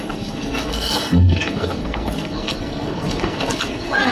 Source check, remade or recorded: remade